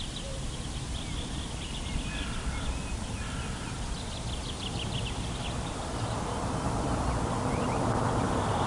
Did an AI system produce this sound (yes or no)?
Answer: no